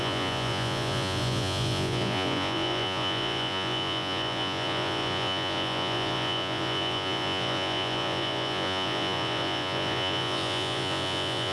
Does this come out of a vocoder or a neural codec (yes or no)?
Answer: yes